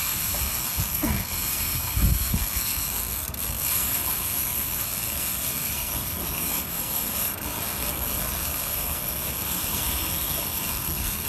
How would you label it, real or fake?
fake